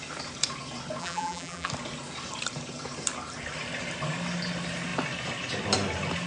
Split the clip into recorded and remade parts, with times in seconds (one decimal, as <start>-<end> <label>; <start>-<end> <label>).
0.0-1.0 recorded; 1.0-1.7 remade; 1.7-6.3 recorded